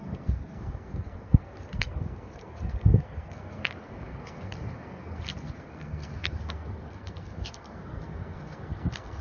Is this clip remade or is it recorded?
remade